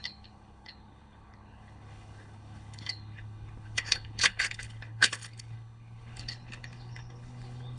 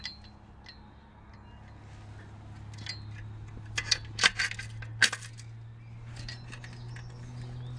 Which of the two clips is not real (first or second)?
first